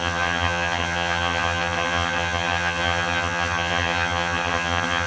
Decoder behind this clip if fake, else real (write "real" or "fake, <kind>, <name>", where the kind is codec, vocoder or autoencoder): fake, vocoder, HiFi-GAN